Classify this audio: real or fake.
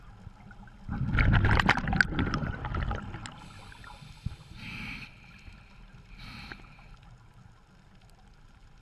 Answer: real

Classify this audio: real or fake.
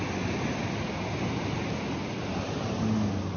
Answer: real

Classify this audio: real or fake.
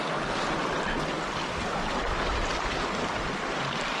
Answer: real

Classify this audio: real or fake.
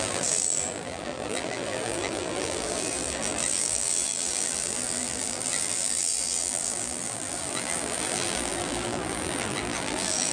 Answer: fake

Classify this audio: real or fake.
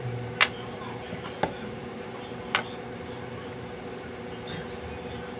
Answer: real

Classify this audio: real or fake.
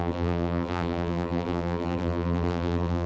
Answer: fake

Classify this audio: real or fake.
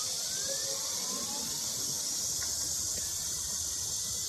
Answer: real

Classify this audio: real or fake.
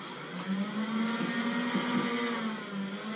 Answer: real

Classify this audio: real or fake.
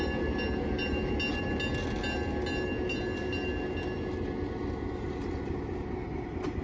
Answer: real